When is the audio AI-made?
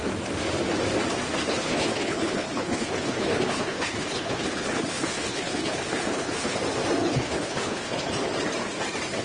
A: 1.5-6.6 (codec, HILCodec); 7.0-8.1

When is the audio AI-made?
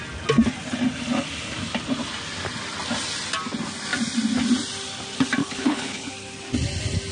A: 5.4-6.1 (codec, HILCodec)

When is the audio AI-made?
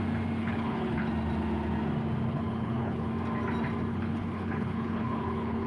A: 0.4-1.1 (codec, HILCodec); 2.3-3.1; 3.9-5.7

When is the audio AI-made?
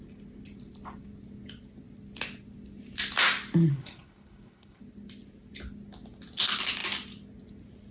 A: 3.7-4.8 (codec, HILCodec)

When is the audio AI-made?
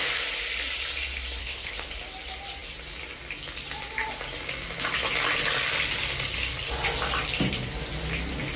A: 1.4-1.9 (codec, HILCodec)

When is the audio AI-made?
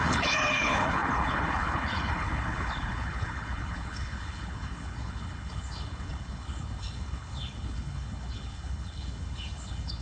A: 0.0-10.0 (codec, HILCodec)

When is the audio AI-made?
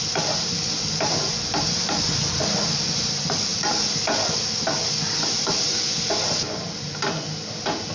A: none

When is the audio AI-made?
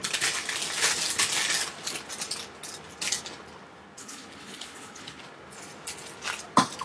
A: 4.0-5.2 (codec, HILCodec)